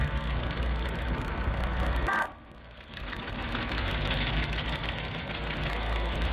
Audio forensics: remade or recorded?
remade